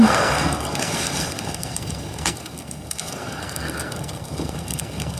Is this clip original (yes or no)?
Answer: no